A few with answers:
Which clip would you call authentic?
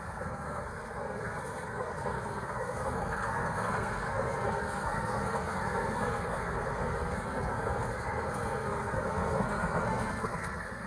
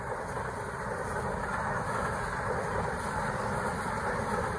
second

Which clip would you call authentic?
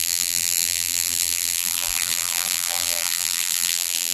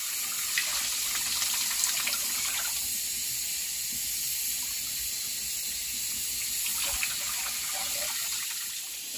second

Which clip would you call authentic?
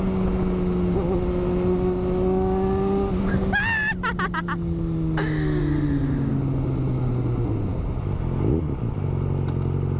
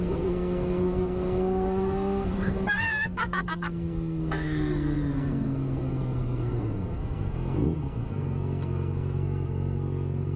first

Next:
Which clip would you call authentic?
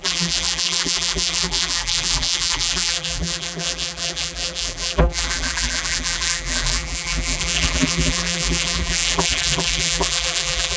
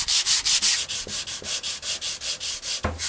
second